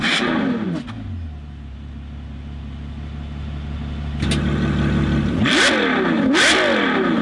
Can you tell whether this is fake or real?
real